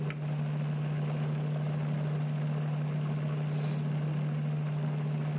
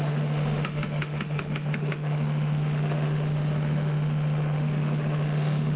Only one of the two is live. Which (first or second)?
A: first